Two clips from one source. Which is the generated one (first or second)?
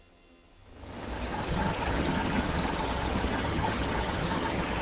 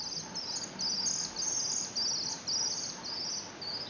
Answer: first